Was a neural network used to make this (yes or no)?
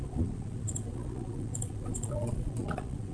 yes